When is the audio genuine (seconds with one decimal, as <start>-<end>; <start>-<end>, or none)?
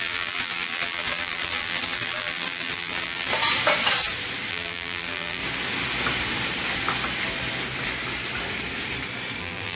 3.3-4.5; 5.4-9.4